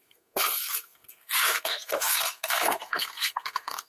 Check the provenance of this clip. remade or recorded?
remade